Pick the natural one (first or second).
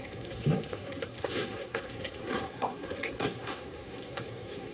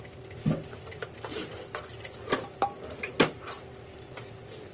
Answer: second